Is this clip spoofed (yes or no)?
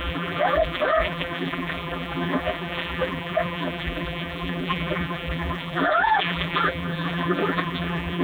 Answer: yes